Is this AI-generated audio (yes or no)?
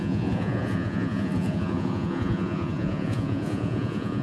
yes